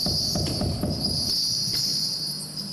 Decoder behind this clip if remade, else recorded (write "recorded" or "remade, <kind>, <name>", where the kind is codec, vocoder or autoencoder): recorded